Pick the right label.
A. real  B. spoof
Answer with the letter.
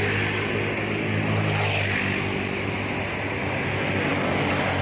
A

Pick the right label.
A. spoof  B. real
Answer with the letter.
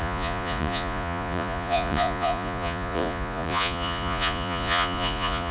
A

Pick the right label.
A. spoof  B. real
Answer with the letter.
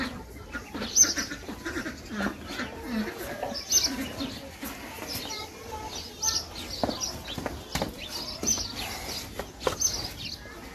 B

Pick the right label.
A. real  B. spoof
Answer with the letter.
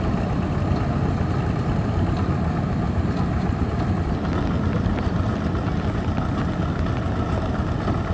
A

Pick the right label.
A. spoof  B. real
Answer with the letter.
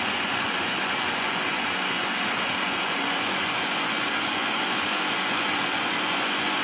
A